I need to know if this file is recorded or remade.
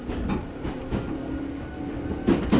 recorded